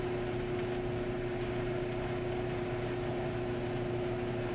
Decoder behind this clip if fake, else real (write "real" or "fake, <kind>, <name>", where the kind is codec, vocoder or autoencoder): real